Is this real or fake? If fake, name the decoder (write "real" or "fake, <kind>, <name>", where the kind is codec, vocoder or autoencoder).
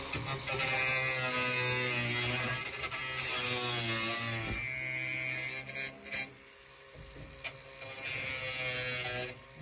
real